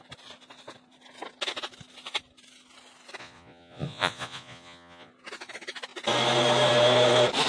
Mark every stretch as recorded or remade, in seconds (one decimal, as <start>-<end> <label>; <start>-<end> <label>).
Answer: 0.0-3.2 recorded; 3.2-5.1 remade; 5.1-7.5 recorded